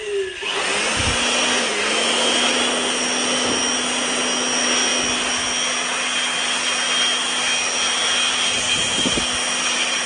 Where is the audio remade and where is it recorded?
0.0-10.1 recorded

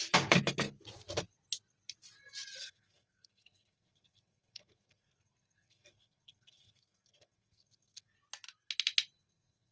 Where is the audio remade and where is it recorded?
0.0-2.6 recorded; 2.6-8.2 remade; 8.2-9.2 recorded; 9.2-9.7 remade